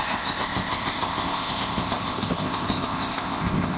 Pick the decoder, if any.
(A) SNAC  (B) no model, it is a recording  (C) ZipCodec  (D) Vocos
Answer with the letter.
C